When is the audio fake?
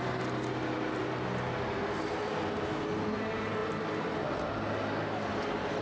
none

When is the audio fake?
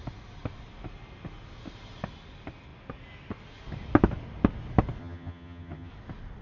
5.0-5.9 (vocoder, HiFi-GAN)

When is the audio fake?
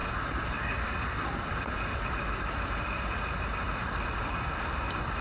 none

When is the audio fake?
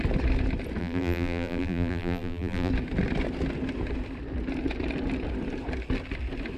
0.8-2.7 (vocoder, BigVGAN v2)